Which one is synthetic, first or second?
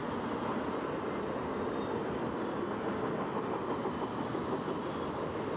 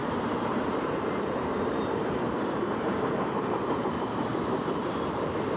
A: second